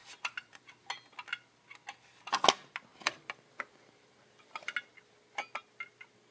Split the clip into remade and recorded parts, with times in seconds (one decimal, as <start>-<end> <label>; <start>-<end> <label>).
0.0-0.6 remade; 0.6-2.9 recorded; 2.9-4.4 remade; 4.4-6.3 recorded